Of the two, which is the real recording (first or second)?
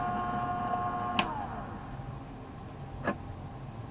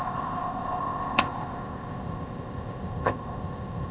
first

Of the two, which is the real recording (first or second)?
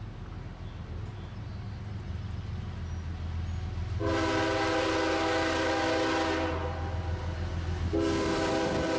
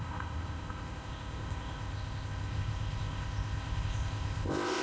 first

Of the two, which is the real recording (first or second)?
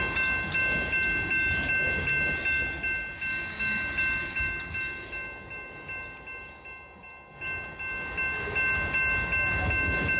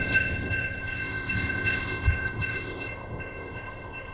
first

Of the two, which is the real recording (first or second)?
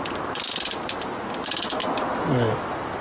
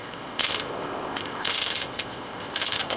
first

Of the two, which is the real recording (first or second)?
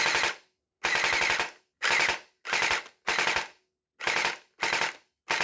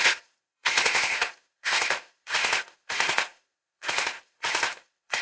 first